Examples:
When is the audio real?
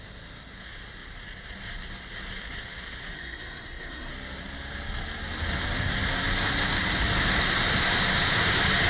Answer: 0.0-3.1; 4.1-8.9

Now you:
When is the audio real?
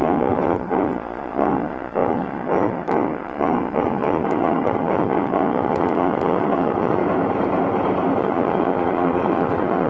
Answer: 7.0-8.2